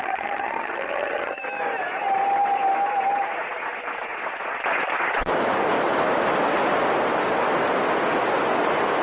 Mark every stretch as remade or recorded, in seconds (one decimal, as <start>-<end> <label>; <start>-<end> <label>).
0.0-1.4 remade; 1.4-9.0 recorded